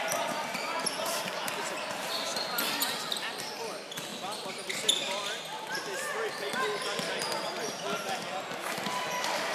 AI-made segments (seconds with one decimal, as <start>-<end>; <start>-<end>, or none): none